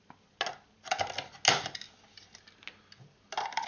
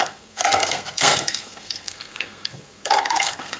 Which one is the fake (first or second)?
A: second